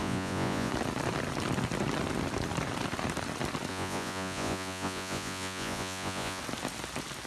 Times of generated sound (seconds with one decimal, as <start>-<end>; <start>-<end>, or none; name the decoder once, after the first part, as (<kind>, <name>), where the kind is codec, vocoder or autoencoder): 0.0-0.7 (vocoder, Vocos); 3.7-6.4